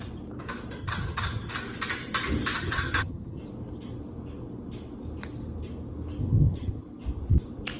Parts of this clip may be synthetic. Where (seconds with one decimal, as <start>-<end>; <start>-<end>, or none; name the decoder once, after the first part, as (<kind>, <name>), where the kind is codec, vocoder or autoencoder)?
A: 0.8-1.5 (vocoder, HiFi-GAN); 2.6-3.4; 6.2-6.8